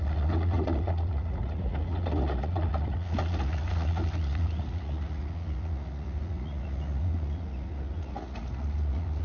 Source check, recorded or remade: remade